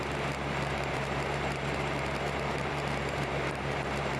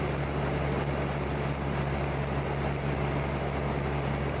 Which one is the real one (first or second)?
second